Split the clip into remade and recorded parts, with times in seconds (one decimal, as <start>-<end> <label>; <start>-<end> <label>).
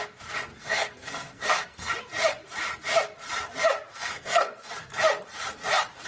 0.0-0.5 recorded; 0.5-1.9 remade; 1.9-3.9 recorded; 3.9-4.7 remade; 4.7-6.1 recorded